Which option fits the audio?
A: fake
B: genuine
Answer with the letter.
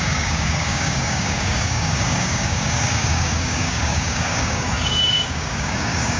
A